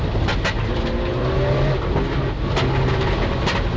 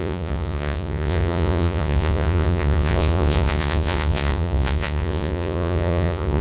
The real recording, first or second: first